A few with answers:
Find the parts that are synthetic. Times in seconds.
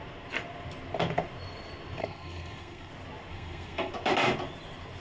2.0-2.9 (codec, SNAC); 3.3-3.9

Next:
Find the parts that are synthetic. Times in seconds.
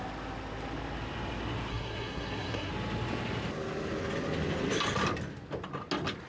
1.7-2.7 (codec, SNAC)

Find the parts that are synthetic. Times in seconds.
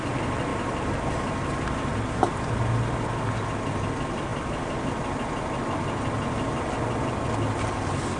none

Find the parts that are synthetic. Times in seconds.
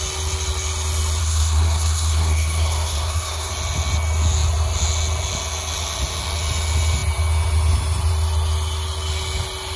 1.2-3.5 (codec, SNAC)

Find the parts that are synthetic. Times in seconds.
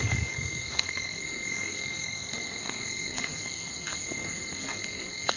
0.0-5.4 (codec, SNAC)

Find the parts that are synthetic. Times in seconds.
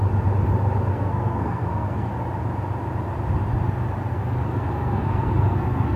0.9-2.1 (codec, SNAC); 4.1-6.0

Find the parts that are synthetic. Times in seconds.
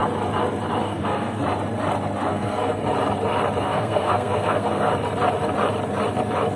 0.8-1.4 (codec, SNAC); 2.3-2.8; 3.6-4.9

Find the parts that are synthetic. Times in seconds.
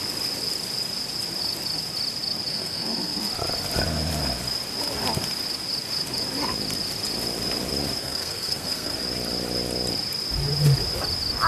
2.5-3.2 (codec, SNAC); 8.0-8.9